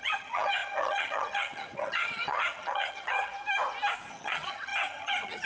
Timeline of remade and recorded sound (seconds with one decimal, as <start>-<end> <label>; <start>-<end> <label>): 0.0-3.3 remade; 3.3-4.1 recorded; 4.1-5.5 remade